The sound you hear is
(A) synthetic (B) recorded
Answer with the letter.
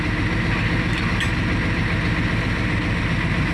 B